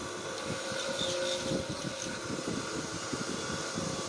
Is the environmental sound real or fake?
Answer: real